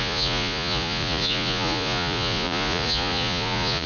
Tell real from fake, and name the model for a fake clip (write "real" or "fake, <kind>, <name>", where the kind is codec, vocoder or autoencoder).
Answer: fake, vocoder, Vocos